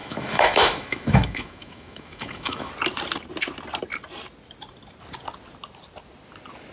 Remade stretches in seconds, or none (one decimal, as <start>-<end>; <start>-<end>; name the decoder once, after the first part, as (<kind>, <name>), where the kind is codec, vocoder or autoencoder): 0.0-2.7 (autoencoder, DAC-VAE)